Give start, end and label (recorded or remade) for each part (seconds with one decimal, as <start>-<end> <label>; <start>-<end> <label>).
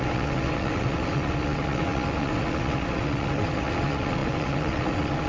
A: 0.0-5.3 remade